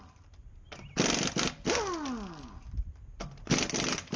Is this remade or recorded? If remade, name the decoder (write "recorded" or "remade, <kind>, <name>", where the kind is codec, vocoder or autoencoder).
recorded